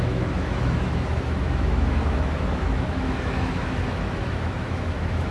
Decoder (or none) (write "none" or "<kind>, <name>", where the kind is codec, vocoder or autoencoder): autoencoder, DAC-VAE